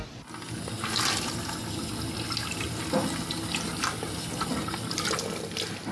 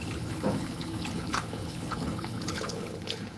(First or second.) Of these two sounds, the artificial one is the second